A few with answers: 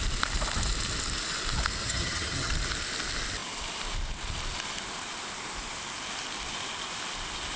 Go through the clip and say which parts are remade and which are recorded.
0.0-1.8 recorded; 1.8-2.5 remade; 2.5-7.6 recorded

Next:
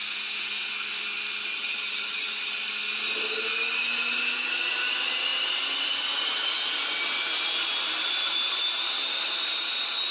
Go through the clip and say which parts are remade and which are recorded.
0.0-1.5 recorded; 1.5-2.7 remade; 2.7-10.1 recorded

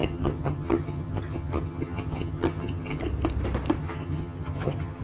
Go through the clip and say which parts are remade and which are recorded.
0.0-3.0 remade; 3.0-3.8 recorded; 3.8-5.0 remade

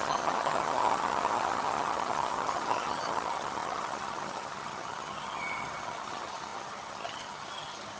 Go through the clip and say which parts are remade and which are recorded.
0.0-8.0 remade

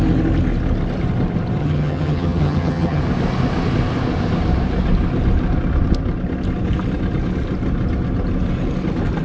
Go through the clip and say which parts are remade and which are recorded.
0.0-1.6 recorded; 1.6-3.0 remade; 3.0-9.2 recorded

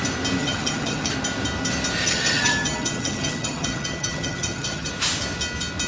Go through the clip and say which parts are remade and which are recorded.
0.0-0.4 recorded; 0.4-1.1 remade; 1.1-2.0 recorded; 2.0-4.9 remade; 4.9-5.9 recorded

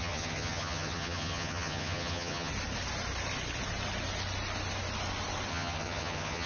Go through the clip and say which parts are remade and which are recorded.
0.0-2.5 remade; 2.5-5.5 recorded; 5.5-6.5 remade

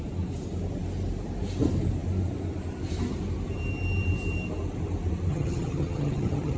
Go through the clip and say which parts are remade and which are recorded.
0.0-5.3 recorded; 5.3-6.6 remade